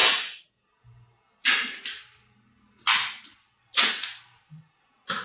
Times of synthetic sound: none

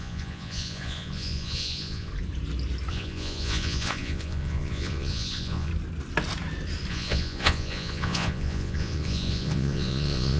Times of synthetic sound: 0.0-2.1 (vocoder, Vocos); 2.9-5.7; 6.9-10.4

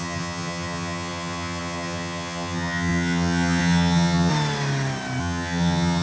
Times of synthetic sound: 0.0-4.3 (vocoder, HiFi-GAN); 5.2-6.0

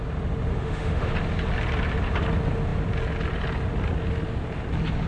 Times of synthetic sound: 0.5-1.1 (autoencoder, DAC-VAE)

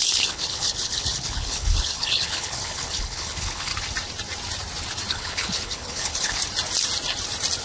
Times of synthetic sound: 0.0-3.7 (codec, HILCodec); 5.1-6.4